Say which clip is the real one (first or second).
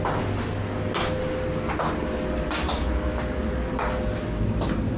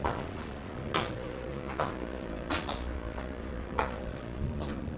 first